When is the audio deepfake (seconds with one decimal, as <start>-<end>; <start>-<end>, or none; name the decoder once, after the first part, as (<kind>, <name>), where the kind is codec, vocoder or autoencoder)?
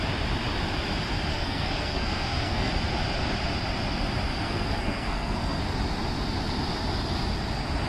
1.3-2.7 (codec, SNAC); 4.3-5.6